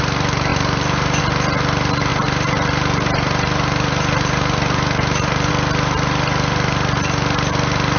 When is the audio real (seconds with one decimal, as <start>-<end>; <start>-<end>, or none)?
0.0-0.5; 1.2-2.1; 5.5-8.0